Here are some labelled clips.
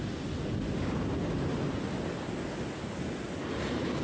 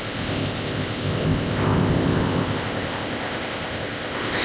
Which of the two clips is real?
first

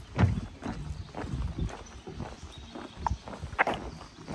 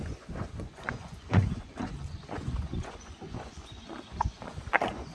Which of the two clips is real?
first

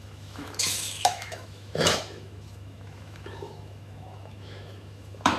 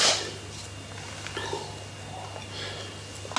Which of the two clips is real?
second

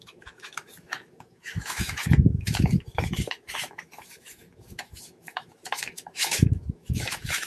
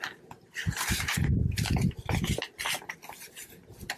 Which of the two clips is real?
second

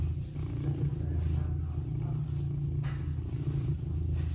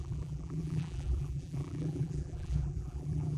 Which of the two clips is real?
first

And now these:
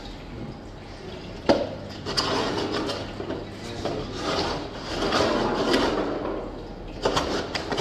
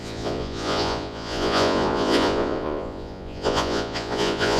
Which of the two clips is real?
first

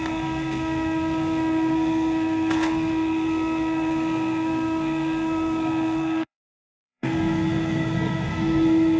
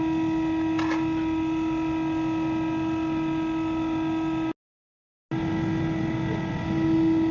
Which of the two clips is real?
second